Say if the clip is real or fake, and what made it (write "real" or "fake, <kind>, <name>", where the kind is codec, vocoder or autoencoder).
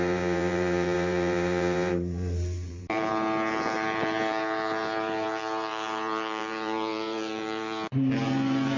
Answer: fake, vocoder, BigVGAN v2